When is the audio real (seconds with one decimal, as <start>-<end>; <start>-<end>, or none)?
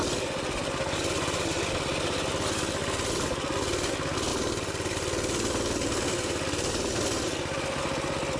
1.8-2.8; 3.9-4.3; 7.8-8.4